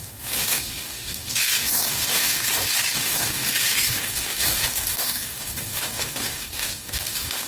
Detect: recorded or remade remade